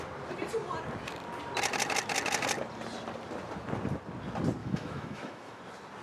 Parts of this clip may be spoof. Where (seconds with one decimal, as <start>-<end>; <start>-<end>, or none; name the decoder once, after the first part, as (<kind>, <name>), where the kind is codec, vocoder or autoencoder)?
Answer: 4.6-5.6 (autoencoder, DAC-VAE)